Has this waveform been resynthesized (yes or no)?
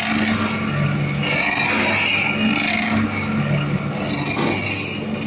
no